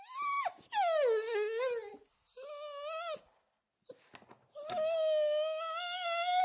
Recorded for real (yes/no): yes